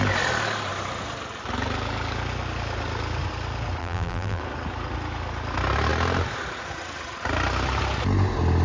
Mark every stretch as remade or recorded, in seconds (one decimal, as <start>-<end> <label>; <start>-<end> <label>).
0.0-3.8 recorded; 3.8-4.4 remade; 4.4-8.6 recorded